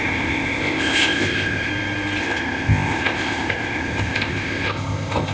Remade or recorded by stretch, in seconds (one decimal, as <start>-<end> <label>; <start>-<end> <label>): 0.0-1.7 remade; 1.7-2.2 recorded; 2.2-5.3 remade